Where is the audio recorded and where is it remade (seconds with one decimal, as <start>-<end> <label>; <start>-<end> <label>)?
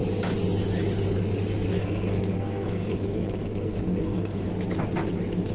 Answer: 0.0-1.8 recorded; 1.8-4.5 remade; 4.5-5.5 recorded